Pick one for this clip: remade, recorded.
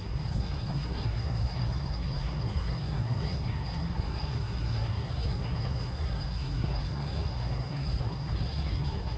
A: remade